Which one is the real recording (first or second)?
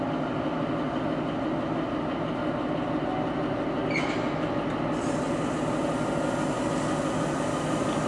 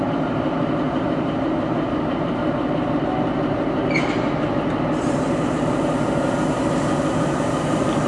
first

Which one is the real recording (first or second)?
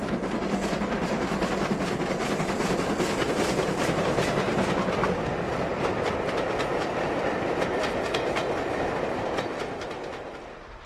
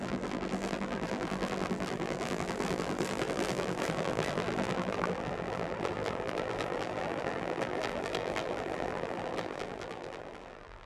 first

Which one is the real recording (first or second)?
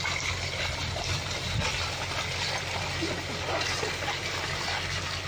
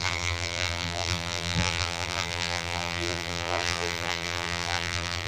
first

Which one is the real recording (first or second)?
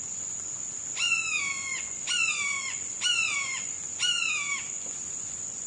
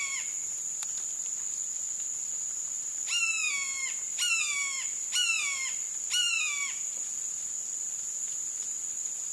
second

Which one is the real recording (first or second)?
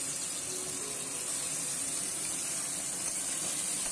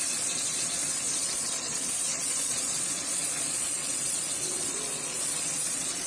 first